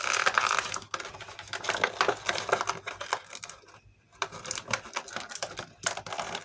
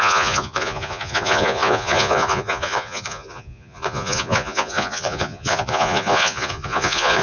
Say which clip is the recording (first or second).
first